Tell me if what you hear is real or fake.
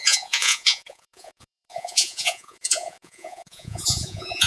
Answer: fake